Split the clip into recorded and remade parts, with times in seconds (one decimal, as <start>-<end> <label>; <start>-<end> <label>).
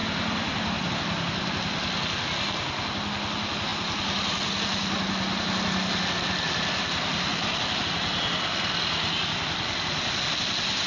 0.0-10.9 recorded